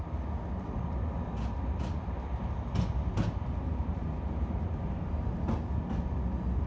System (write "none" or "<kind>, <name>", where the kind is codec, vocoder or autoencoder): none